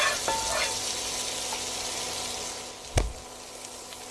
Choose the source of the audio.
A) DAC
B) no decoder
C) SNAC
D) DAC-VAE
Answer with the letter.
B